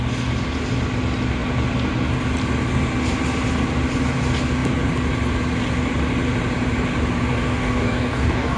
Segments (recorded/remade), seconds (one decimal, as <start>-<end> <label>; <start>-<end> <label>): 0.0-7.3 recorded; 7.3-8.6 remade